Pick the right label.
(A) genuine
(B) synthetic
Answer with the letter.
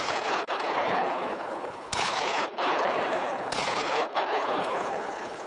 B